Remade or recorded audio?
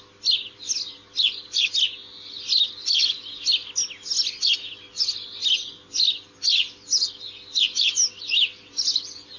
recorded